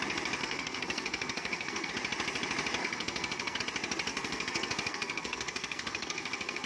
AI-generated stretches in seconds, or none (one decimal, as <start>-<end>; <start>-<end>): 0.4-1.9; 2.8-3.6; 4.1-6.7